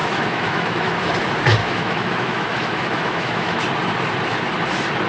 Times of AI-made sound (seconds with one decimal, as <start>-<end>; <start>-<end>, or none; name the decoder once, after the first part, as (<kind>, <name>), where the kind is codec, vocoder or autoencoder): 0.0-1.1 (autoencoder, DAC-VAE); 1.6-3.6